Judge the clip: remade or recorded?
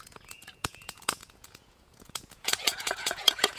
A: remade